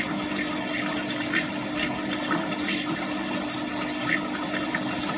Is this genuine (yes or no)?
yes